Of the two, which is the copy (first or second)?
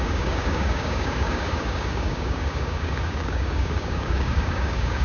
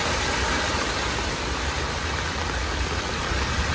first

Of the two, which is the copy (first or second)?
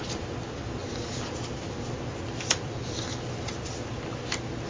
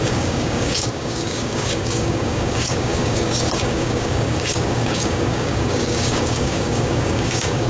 second